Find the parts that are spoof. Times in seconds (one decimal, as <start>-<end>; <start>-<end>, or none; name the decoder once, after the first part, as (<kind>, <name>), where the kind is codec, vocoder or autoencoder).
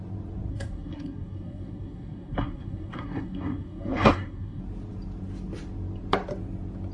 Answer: 0.5-4.6 (codec, SNAC)